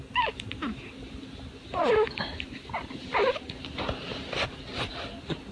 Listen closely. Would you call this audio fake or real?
real